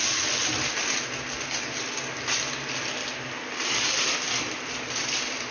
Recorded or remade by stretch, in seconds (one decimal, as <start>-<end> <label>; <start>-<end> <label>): 0.0-5.5 recorded